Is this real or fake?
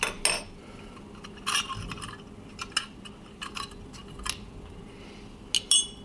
real